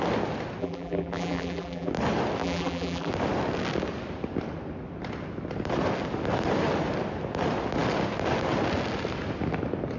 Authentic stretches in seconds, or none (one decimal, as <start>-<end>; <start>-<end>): 0.0-0.6; 1.9-2.4; 3.1-10.0